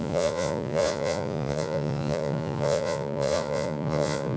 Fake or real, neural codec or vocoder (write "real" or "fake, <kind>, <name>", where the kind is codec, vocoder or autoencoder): fake, vocoder, Vocos